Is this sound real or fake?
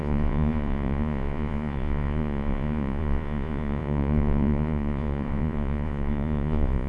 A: fake